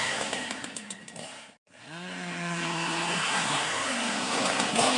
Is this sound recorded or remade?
remade